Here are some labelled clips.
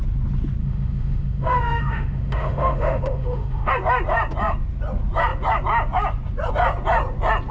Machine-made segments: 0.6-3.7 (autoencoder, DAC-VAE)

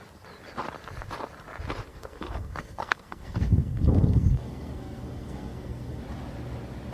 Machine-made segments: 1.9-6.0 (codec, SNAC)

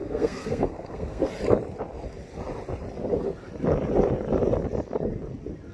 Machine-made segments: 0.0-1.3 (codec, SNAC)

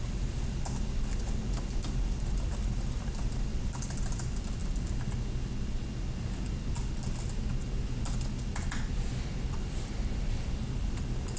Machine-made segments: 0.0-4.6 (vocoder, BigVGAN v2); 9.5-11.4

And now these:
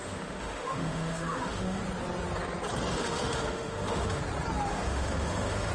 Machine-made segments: 0.0-1.8 (autoencoder, DAC-VAE); 2.9-4.2; 4.7-5.7

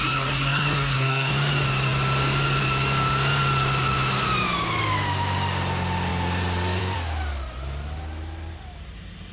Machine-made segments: 0.0-1.3 (codec, SNAC)

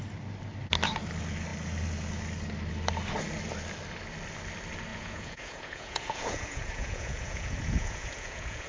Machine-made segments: 4.9-8.7 (vocoder, Vocos)